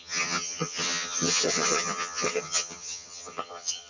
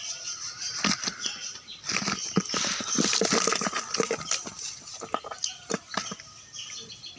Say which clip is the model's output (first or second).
first